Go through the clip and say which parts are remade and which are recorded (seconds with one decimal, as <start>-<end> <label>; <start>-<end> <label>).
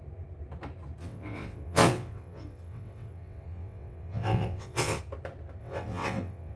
0.0-1.0 recorded; 1.0-5.0 remade; 5.0-5.6 recorded; 5.6-6.6 remade